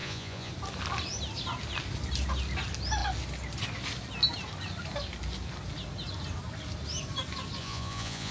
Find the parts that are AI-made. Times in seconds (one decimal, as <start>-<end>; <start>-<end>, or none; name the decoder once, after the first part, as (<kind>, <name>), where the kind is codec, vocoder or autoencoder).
0.0-0.5 (vocoder, Vocos); 7.6-8.3